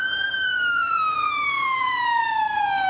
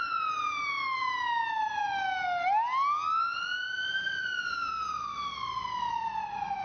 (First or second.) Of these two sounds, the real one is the second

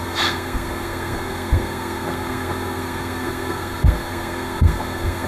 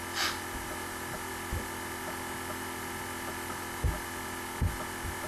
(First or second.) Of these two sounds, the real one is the second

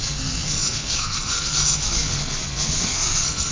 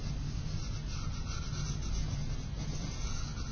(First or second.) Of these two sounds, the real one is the second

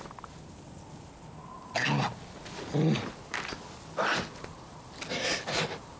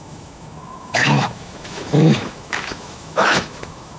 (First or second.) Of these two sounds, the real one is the first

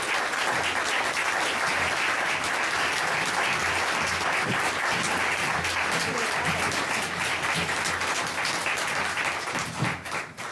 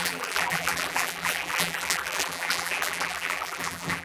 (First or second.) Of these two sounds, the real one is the first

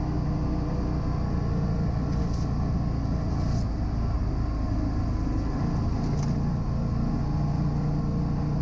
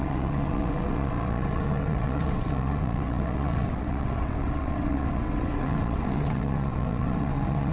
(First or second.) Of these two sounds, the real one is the first